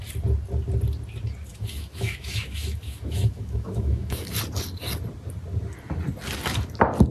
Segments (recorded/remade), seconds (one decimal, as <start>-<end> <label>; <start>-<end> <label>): 0.0-1.5 recorded; 1.5-4.3 remade; 4.3-7.1 recorded